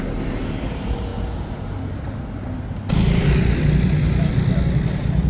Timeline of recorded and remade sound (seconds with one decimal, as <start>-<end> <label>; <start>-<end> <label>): 0.0-5.3 recorded